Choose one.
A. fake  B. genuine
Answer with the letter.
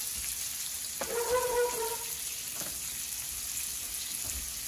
B